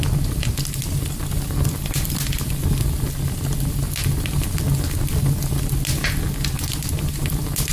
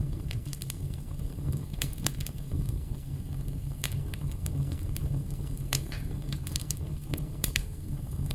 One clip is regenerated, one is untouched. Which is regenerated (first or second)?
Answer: second